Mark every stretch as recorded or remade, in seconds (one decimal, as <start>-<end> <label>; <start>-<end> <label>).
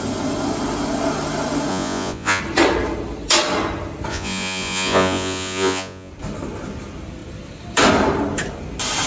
0.0-1.7 recorded; 1.7-2.4 remade; 2.4-4.1 recorded; 4.1-6.1 remade; 6.1-9.1 recorded